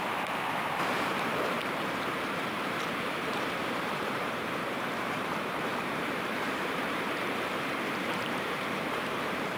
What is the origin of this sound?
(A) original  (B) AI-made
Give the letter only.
B